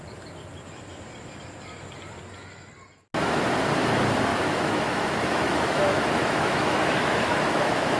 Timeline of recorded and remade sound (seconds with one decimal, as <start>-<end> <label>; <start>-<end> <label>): 0.0-4.3 recorded; 4.3-8.0 remade